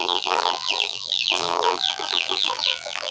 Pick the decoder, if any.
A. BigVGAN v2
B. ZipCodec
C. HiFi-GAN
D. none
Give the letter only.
A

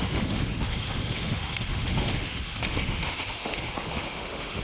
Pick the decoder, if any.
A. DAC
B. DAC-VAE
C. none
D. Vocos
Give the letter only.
B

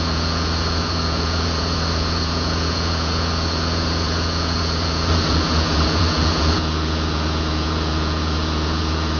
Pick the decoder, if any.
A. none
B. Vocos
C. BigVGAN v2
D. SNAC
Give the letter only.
B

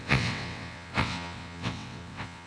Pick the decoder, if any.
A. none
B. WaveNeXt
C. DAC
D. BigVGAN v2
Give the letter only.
B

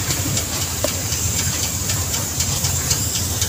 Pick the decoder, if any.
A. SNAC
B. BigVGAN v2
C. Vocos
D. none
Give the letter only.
B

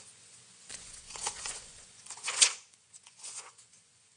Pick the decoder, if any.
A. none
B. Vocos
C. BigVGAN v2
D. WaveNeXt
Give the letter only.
B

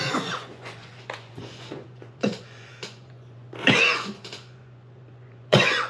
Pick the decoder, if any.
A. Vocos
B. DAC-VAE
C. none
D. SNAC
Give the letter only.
A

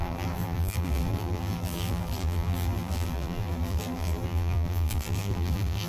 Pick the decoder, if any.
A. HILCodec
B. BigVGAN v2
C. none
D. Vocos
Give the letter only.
B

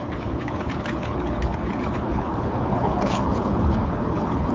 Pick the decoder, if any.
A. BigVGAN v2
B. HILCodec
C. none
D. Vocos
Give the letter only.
B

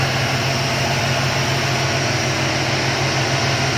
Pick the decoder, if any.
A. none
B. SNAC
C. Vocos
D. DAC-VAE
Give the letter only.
A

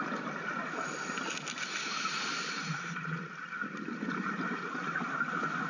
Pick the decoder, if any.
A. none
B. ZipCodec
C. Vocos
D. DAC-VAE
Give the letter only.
A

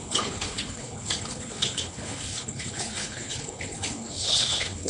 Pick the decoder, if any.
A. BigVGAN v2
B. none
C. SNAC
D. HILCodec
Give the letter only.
D